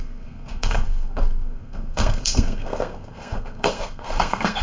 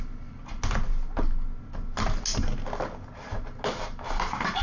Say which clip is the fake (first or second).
first